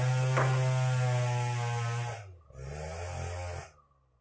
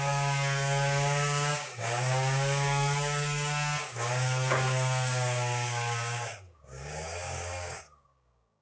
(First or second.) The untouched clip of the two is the first